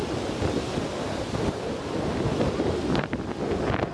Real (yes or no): yes